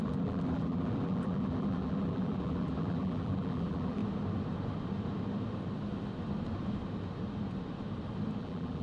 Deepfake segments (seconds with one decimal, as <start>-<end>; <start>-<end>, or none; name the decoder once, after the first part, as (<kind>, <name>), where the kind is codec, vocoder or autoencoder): 0.0-4.0 (vocoder, BigVGAN v2); 8.4-8.8

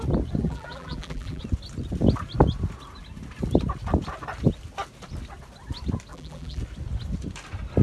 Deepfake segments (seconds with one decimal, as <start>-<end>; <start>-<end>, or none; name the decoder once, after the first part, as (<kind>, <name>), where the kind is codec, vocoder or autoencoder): 0.4-1.4 (vocoder, BigVGAN v2); 6.1-6.6

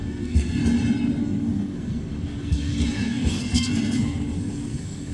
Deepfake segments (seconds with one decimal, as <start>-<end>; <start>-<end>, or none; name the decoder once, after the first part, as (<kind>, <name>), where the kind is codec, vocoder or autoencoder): 0.0-0.6 (codec, SNAC); 1.2-5.1

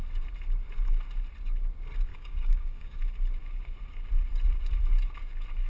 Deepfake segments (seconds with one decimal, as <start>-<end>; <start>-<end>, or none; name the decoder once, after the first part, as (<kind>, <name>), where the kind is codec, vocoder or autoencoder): 2.1-3.0 (codec, DAC)

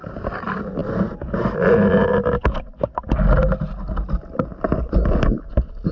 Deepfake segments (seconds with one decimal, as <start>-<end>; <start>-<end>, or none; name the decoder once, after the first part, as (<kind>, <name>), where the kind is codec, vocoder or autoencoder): none